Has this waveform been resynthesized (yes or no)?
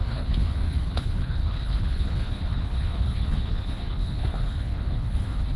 yes